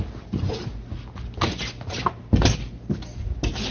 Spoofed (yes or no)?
no